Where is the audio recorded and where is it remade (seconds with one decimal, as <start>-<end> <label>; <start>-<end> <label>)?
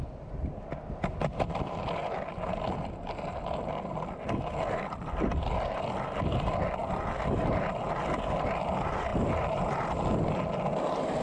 0.0-9.1 recorded; 9.1-10.3 remade; 10.3-11.2 recorded